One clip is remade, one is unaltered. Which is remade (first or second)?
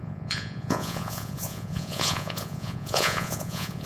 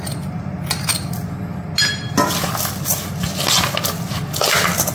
first